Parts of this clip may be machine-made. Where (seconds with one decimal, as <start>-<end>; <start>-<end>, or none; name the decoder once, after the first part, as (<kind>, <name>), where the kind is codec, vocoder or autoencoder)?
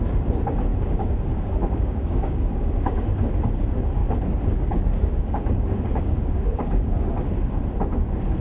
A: 0.7-3.3 (codec, DAC); 4.0-7.1